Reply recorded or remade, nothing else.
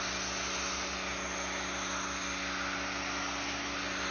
recorded